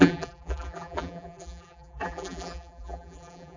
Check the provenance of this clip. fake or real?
fake